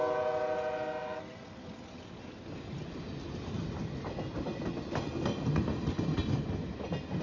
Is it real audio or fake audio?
real